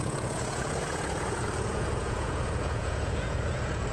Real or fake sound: fake